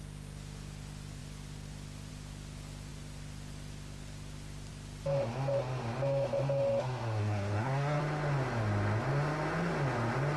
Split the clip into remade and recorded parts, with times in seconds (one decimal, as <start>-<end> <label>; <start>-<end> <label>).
0.0-6.8 recorded; 6.8-8.0 remade; 8.0-10.4 recorded